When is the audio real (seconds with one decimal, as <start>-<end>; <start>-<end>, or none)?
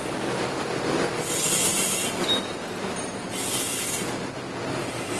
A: 0.0-5.2